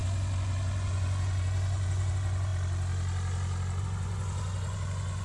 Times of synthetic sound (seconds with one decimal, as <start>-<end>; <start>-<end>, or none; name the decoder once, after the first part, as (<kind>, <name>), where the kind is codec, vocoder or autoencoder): 0.0-2.5 (vocoder, Vocos); 3.8-5.2